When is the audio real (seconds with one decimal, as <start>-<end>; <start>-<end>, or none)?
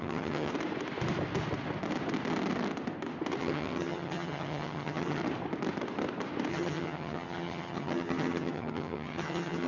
0.5-3.4; 5.2-6.5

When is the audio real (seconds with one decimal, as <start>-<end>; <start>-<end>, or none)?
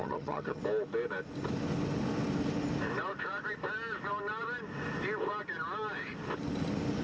0.6-7.0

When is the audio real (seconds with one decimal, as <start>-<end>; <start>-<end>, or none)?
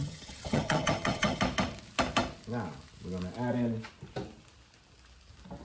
1.4-5.6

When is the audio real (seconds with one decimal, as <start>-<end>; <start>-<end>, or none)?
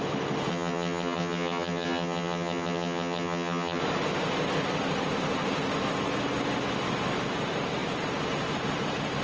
0.0-0.5; 3.8-9.2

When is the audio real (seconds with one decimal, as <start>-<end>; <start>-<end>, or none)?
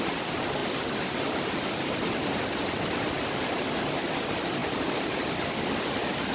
0.0-6.3